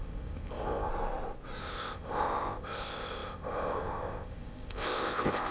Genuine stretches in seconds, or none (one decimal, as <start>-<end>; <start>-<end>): 0.9-1.6